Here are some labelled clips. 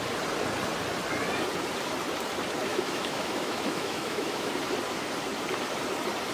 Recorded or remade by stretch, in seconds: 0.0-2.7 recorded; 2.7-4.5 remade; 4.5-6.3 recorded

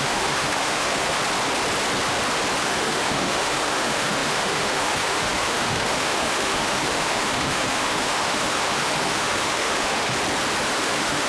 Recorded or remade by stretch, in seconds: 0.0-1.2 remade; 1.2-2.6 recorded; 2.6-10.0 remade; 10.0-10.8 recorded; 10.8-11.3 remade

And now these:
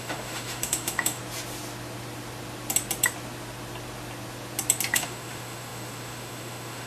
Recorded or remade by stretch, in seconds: 0.0-1.2 remade; 1.2-4.9 recorded; 4.9-6.9 remade